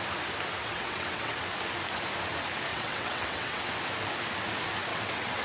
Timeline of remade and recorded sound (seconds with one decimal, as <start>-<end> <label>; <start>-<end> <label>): 0.0-0.6 recorded; 0.6-1.3 remade; 1.3-2.7 recorded; 2.7-3.7 remade; 3.7-4.9 recorded; 4.9-5.4 remade